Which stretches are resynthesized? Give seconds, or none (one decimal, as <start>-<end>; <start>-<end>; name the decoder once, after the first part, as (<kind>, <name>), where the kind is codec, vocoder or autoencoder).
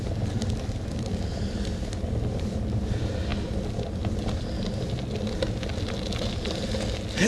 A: none